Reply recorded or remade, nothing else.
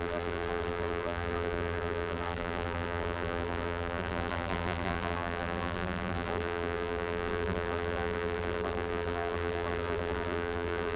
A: remade